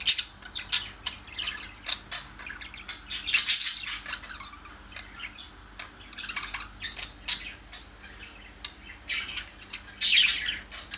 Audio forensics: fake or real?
real